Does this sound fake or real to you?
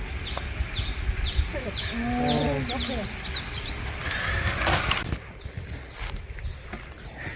real